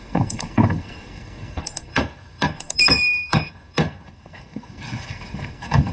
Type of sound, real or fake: fake